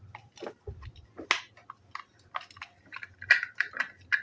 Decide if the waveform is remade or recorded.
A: recorded